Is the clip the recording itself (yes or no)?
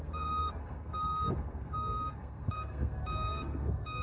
no